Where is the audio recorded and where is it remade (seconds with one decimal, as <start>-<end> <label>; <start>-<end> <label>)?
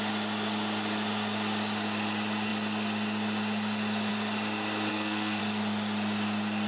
0.0-4.9 recorded; 4.9-5.4 remade; 5.4-6.7 recorded